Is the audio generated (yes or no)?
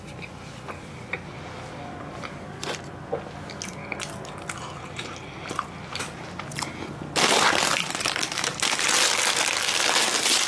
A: no